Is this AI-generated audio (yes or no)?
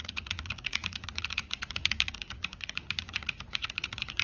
yes